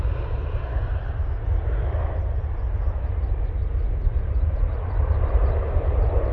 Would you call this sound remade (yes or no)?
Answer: yes